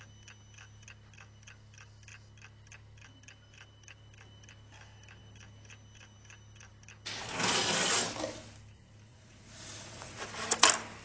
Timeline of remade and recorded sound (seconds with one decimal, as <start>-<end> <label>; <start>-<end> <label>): 0.0-9.1 recorded; 9.1-10.2 remade; 10.2-11.0 recorded